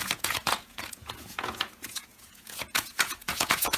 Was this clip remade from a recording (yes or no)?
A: yes